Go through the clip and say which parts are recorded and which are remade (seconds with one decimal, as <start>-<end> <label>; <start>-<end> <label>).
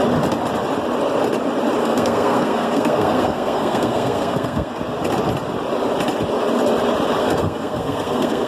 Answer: 0.0-1.8 recorded; 1.8-4.7 remade; 4.7-7.2 recorded; 7.2-8.5 remade